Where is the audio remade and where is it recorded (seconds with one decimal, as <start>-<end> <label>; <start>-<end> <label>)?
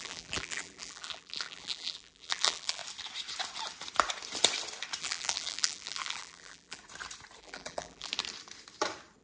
0.0-2.8 remade; 2.8-5.0 recorded; 5.0-6.8 remade; 6.8-7.4 recorded; 7.4-8.1 remade; 8.1-9.2 recorded